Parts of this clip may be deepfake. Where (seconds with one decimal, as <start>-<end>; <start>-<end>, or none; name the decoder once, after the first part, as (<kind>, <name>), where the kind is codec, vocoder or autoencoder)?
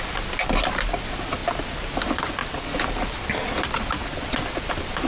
none